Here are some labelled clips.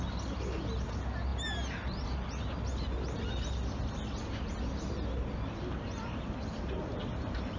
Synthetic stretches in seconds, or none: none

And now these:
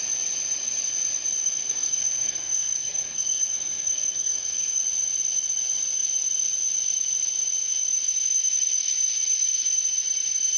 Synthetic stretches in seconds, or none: 1.4-4.8 (codec, SNAC)

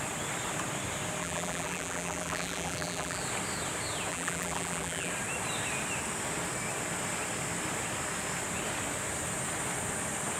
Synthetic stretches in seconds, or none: 1.2-3.2 (vocoder, BigVGAN v2); 4.1-5.1

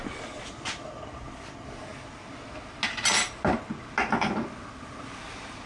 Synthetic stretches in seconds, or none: none